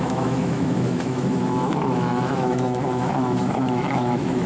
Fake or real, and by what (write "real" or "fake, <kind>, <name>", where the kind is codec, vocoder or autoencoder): fake, autoencoder, DAC-VAE